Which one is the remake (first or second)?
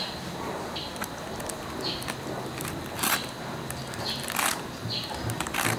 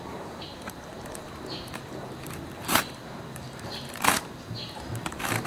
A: second